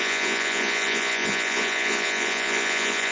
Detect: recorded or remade remade